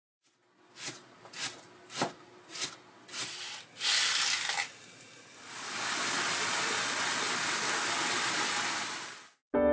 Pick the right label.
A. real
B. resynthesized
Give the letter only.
A